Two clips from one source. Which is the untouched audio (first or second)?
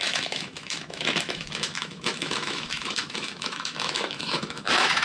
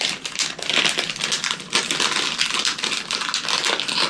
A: second